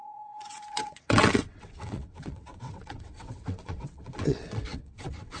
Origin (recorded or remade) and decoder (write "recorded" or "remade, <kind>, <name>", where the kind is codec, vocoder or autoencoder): remade, vocoder, WaveNeXt